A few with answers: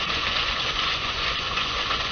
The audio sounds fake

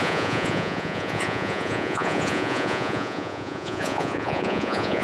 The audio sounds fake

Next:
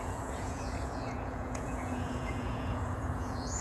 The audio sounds fake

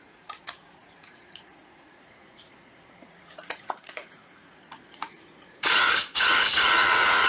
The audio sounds fake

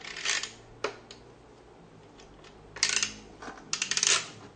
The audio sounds real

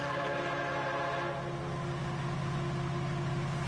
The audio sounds real